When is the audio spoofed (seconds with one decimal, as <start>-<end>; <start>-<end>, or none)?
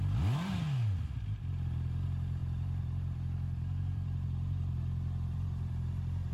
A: 2.4-6.3